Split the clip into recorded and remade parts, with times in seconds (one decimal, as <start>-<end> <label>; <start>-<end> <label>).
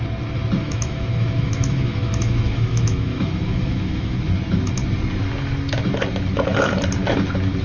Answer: 0.0-0.6 recorded; 0.6-4.2 remade; 4.2-7.6 recorded